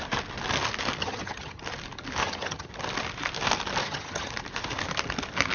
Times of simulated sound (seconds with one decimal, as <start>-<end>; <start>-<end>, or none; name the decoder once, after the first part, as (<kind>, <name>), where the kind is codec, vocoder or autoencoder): 1.0-1.6 (vocoder, HiFi-GAN); 2.2-2.7; 3.8-4.3